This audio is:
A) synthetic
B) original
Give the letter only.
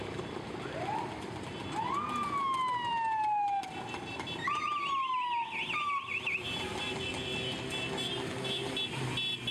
B